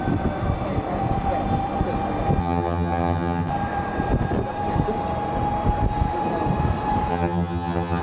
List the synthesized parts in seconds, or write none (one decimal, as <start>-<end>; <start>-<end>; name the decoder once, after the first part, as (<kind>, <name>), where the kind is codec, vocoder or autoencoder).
2.4-3.5 (vocoder, HiFi-GAN); 7.1-8.0